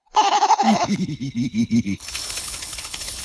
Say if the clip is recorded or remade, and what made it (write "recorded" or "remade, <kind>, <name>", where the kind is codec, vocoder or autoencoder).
remade, codec, HILCodec